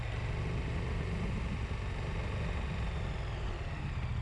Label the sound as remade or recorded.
recorded